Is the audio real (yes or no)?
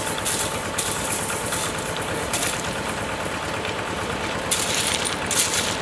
yes